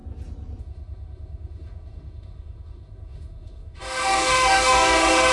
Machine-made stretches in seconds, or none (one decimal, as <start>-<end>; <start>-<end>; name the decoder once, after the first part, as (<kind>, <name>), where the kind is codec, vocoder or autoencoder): 0.6-5.3 (autoencoder, DAC-VAE)

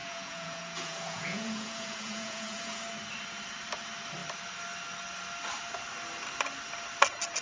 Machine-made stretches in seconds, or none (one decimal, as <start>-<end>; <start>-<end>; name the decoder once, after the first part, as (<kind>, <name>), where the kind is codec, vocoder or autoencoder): 0.0-2.8 (vocoder, Vocos)

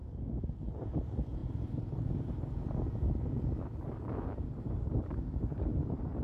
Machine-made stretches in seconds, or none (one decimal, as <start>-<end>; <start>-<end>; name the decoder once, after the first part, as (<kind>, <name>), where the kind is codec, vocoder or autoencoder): 0.8-6.2 (vocoder, BigVGAN v2)